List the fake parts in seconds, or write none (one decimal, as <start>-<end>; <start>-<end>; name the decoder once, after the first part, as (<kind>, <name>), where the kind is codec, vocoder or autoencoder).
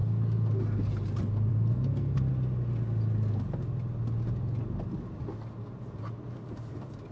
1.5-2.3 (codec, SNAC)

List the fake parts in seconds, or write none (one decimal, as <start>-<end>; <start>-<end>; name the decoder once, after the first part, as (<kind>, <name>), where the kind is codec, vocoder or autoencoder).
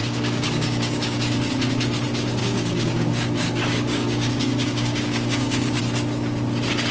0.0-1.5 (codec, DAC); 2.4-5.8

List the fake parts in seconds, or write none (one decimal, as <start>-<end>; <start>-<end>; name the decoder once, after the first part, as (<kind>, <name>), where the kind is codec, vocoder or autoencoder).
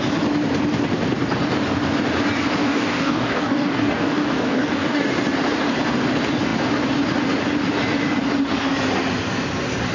2.6-5.0 (codec, DAC)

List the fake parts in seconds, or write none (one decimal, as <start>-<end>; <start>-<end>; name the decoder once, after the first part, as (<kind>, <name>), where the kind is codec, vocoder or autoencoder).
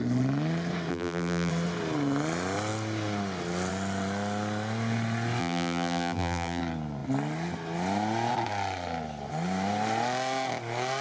0.9-1.5 (vocoder, BigVGAN v2); 5.4-6.6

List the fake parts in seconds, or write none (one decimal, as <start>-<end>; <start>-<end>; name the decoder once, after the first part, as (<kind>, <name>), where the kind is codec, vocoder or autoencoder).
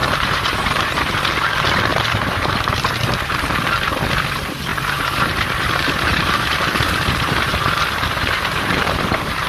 0.0-1.2 (vocoder, BigVGAN v2); 1.9-2.9; 4.7-9.5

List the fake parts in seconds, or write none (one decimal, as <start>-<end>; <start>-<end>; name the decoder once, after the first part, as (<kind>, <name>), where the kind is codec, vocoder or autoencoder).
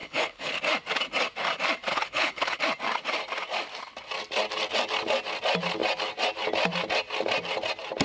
0.0-0.6 (codec, HILCodec); 1.9-2.6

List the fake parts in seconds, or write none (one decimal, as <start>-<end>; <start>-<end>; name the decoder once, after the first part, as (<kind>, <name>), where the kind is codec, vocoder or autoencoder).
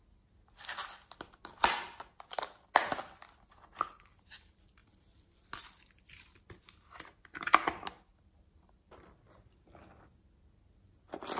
4.8-10.0 (vocoder, BigVGAN v2)